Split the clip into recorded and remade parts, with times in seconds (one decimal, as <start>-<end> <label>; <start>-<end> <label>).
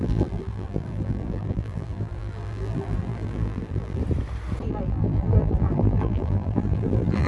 0.0-4.0 remade; 4.0-4.7 recorded; 4.7-7.3 remade